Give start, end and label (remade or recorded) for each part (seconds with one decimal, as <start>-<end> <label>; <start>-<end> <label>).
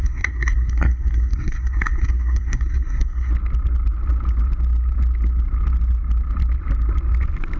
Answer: 0.0-3.3 remade; 3.3-7.6 recorded